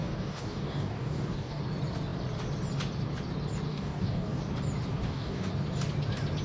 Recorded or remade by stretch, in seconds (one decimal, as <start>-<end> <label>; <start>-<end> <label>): 0.0-1.6 remade; 1.6-3.7 recorded; 3.7-4.4 remade; 4.4-4.9 recorded; 4.9-5.5 remade; 5.5-6.4 recorded